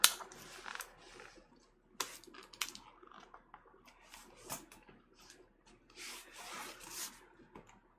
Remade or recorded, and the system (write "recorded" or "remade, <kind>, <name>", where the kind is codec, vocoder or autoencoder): recorded